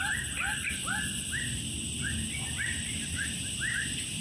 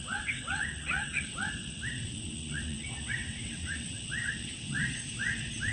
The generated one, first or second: second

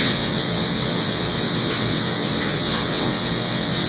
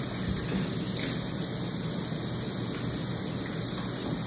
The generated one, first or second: first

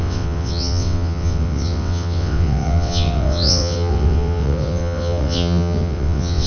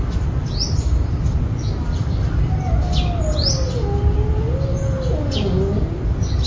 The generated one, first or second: first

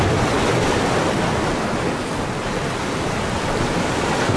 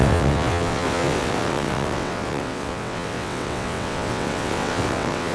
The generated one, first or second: second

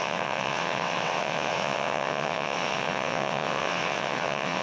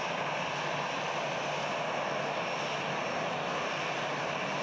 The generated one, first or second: first